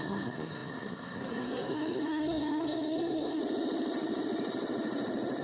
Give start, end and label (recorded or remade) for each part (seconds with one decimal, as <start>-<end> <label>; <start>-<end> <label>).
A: 0.0-3.4 remade; 3.4-5.4 recorded